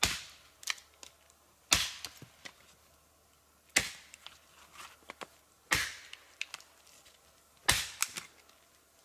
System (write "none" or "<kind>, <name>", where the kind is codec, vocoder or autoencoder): none